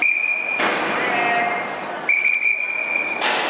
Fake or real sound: real